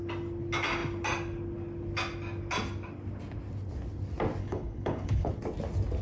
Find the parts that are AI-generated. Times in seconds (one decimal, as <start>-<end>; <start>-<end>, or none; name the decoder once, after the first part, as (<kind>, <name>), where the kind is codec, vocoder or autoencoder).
4.4-5.3 (codec, HILCodec)